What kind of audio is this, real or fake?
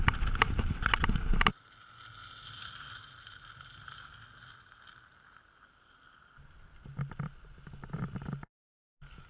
real